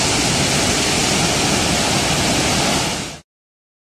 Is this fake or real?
real